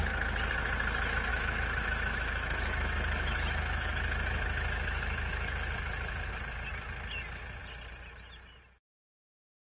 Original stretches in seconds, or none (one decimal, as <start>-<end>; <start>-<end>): 0.0-1.3; 6.3-9.7